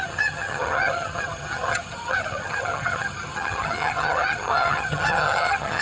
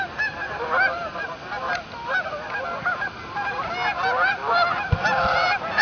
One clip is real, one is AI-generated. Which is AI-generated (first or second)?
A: first